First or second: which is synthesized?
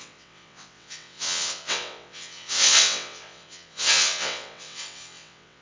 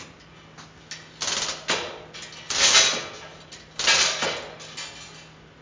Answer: first